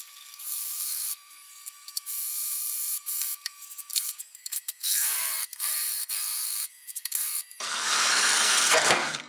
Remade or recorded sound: remade